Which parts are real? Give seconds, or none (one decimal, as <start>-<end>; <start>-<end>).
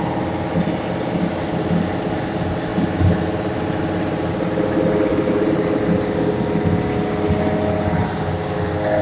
0.0-5.1; 5.8-9.0